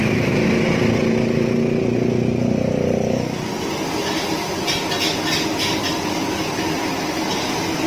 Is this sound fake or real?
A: real